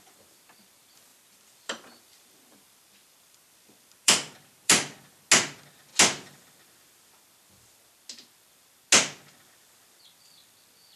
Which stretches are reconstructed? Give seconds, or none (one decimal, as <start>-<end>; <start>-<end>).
1.1-5.2